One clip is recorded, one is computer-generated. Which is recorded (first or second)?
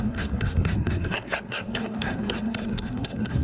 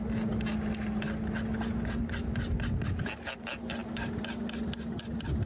second